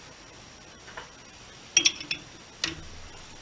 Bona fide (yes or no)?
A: yes